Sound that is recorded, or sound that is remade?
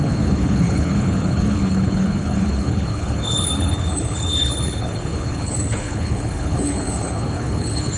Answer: remade